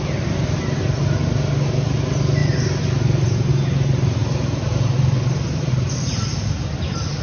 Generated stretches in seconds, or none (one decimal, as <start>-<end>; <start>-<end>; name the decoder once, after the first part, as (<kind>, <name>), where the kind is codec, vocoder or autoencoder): 2.4-3.5 (vocoder, BigVGAN v2); 4.2-6.5